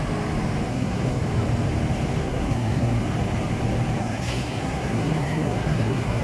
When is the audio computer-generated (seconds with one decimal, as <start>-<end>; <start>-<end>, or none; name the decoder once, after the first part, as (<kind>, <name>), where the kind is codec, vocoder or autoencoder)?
0.7-1.2 (codec, SNAC); 2.2-3.0; 4.0-6.2